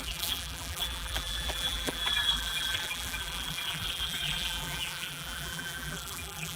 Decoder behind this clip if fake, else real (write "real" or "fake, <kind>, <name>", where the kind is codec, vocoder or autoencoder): fake, vocoder, BigVGAN v2